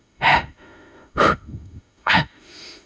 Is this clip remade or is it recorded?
remade